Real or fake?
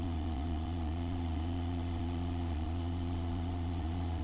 fake